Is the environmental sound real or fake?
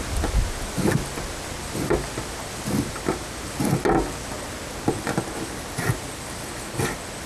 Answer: real